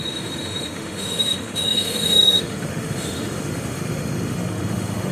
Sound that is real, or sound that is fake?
fake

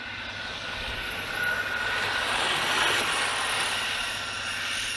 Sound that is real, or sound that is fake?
real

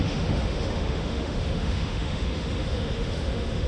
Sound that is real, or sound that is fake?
fake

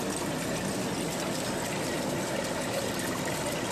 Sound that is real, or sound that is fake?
real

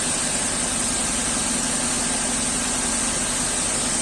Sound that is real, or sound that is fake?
real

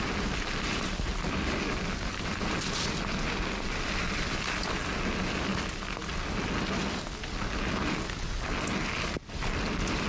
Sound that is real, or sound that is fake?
real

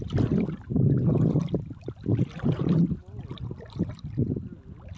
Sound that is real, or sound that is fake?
real